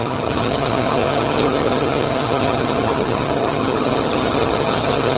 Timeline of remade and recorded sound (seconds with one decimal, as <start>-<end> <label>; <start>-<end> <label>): 0.0-5.2 remade